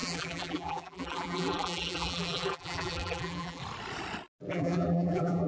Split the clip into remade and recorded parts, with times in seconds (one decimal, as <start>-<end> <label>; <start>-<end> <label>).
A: 0.0-3.6 remade; 3.6-4.5 recorded; 4.5-5.5 remade